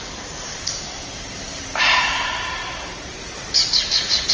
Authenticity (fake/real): fake